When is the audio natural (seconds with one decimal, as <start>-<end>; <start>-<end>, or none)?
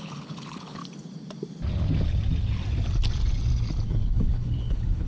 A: 0.8-3.9